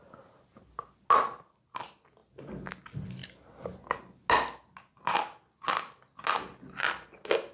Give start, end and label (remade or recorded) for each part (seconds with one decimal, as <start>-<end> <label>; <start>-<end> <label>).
0.0-7.5 recorded